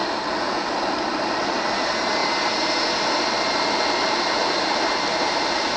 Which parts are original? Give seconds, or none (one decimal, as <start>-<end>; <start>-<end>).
0.0-0.9